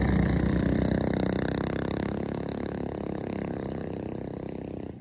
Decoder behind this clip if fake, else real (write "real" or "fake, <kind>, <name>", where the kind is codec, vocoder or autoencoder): real